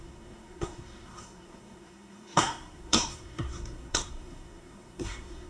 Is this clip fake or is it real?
fake